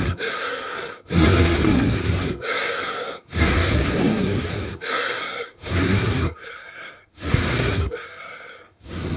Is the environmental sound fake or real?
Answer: fake